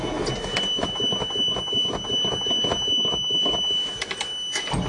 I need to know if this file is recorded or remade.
recorded